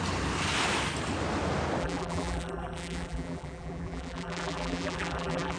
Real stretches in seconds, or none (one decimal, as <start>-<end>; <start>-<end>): 0.0-1.8